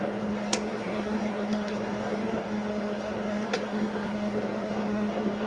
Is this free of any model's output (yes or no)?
no